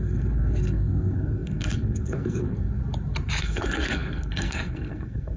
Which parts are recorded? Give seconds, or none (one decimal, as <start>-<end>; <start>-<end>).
2.8-3.4